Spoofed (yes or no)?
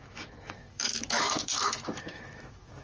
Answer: yes